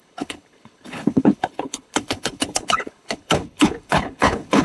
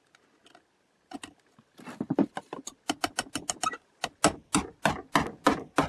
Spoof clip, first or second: first